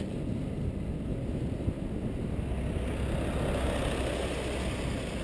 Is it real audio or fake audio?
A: real